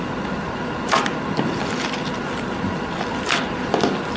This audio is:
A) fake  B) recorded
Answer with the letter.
B